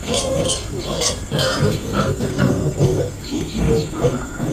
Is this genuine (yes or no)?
no